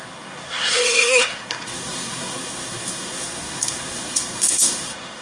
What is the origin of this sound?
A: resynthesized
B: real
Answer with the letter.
A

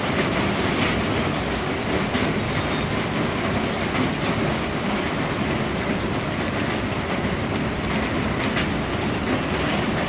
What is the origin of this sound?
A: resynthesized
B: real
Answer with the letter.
B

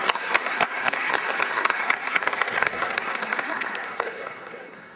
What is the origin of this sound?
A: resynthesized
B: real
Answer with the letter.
A